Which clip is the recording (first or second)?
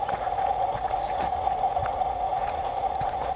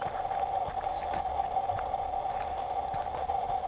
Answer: second